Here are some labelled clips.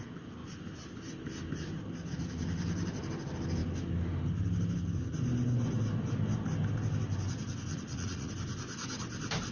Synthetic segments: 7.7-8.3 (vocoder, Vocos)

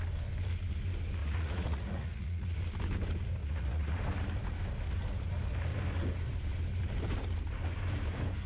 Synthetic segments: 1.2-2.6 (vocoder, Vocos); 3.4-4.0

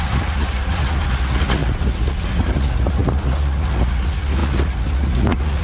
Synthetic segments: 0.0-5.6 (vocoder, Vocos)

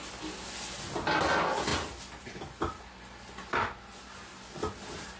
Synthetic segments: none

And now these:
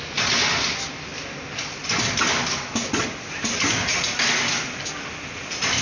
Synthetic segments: none

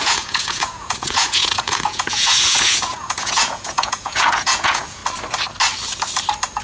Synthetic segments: 0.0-5.0 (vocoder, Vocos)